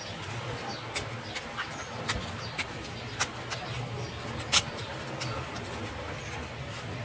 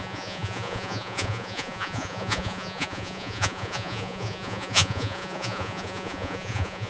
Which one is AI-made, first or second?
second